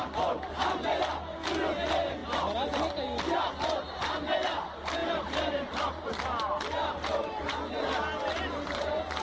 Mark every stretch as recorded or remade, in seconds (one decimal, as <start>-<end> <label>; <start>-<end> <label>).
0.0-9.2 recorded